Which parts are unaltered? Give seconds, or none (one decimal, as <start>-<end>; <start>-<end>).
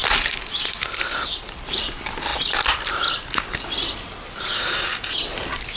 none